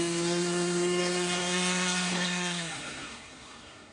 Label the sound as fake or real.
fake